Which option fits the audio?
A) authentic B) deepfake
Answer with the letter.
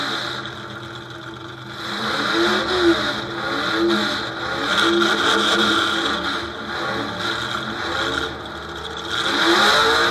A